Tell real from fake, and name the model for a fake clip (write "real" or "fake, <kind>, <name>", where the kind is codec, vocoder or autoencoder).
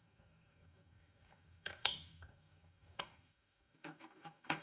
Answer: fake, codec, DAC